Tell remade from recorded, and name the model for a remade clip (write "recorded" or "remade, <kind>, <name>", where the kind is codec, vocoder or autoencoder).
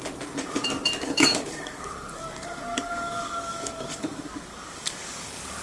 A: remade, codec, DAC